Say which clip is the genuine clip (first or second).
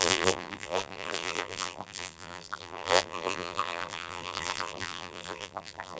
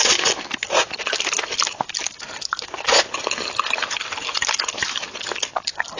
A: second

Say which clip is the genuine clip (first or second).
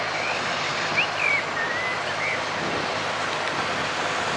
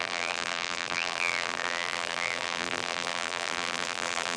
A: first